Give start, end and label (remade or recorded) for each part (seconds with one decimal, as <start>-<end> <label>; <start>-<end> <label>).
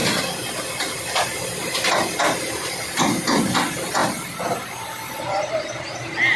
0.0-6.4 recorded